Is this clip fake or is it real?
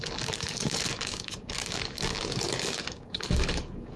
fake